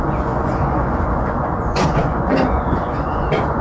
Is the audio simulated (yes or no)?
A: yes